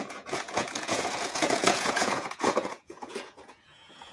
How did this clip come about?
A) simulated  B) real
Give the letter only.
A